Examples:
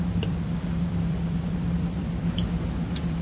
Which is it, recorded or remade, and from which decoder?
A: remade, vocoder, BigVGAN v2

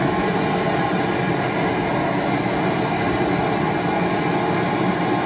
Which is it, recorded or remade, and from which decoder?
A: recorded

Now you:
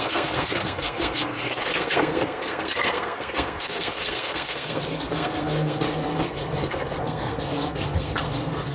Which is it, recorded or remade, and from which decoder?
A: remade, codec, SNAC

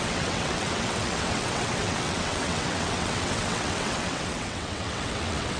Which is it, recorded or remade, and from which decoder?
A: remade, vocoder, WaveNeXt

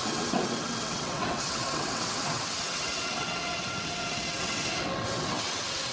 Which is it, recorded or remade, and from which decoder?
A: remade, vocoder, WaveNeXt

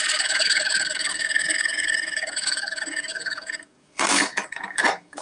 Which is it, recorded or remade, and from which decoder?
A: remade, codec, DAC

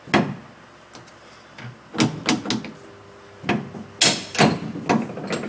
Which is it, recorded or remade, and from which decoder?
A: recorded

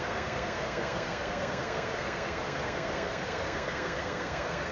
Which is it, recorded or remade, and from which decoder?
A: remade, codec, SNAC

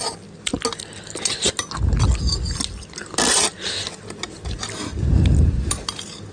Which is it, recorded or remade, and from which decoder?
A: recorded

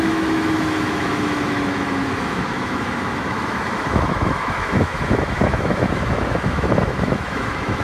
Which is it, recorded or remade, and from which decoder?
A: remade, autoencoder, DAC-VAE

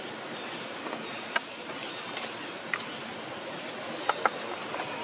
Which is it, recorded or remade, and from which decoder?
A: recorded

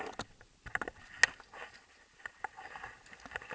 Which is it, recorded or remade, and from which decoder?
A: recorded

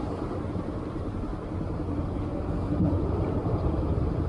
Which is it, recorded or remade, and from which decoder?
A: recorded